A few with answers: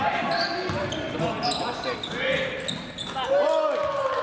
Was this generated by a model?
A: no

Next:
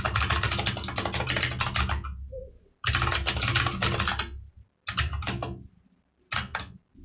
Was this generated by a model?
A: no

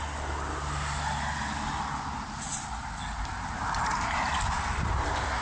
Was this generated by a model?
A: no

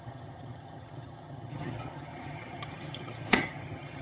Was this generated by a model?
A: yes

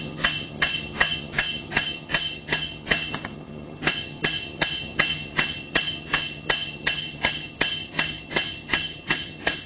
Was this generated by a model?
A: yes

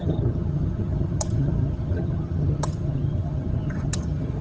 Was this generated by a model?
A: yes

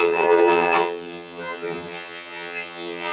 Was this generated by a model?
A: yes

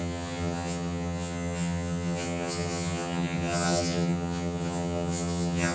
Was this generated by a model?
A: yes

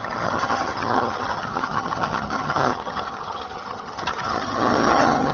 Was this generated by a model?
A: yes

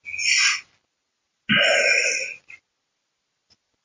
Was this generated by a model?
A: no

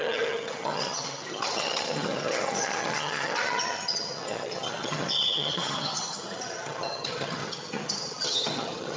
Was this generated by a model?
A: yes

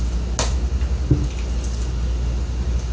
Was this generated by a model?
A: no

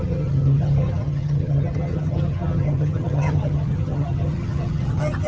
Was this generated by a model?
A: yes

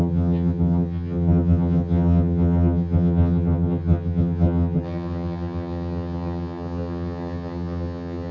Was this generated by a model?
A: yes